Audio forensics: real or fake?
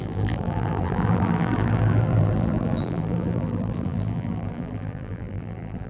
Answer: fake